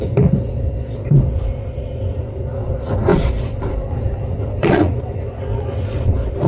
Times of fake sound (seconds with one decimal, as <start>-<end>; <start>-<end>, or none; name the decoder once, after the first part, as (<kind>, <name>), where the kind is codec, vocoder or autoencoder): 0.0-6.5 (vocoder, Vocos)